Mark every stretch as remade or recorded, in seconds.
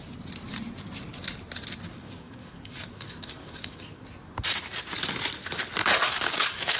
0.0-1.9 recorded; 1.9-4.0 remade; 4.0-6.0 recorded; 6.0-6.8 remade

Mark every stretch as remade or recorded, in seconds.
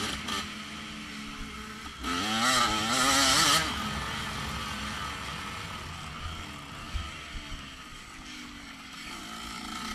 0.0-6.8 recorded; 6.8-9.2 remade; 9.2-9.9 recorded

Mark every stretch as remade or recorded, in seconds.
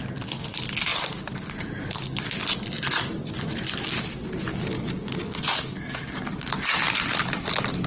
0.0-4.5 recorded; 4.5-6.5 remade; 6.5-7.9 recorded